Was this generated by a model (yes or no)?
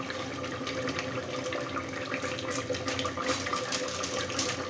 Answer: no